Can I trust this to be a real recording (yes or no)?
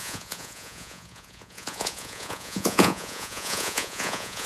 no